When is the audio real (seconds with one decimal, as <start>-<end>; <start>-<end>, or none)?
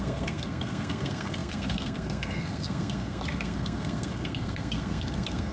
none